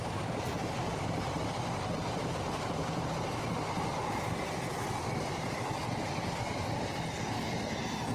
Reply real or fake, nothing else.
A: real